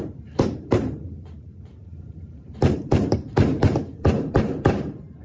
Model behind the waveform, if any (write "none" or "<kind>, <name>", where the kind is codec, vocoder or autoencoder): vocoder, BigVGAN v2